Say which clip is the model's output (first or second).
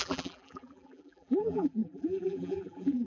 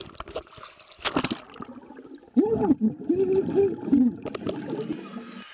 first